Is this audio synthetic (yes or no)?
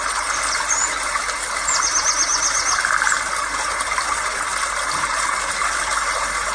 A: no